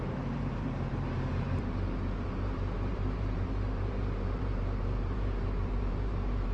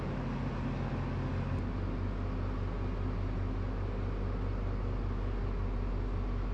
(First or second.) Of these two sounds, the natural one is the second